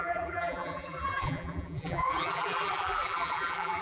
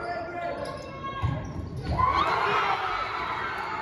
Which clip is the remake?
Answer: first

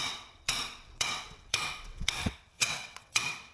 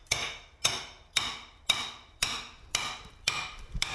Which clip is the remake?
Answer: first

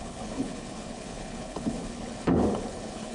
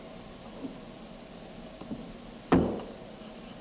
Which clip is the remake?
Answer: first